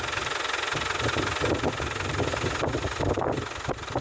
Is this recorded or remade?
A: recorded